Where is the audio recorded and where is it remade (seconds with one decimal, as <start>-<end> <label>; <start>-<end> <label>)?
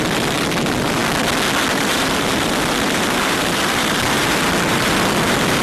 0.0-1.0 remade; 1.0-1.7 recorded; 1.7-5.6 remade